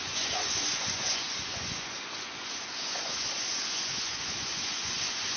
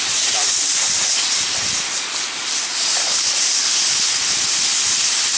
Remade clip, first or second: first